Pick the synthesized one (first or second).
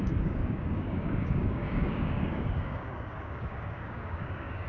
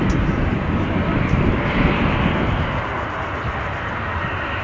first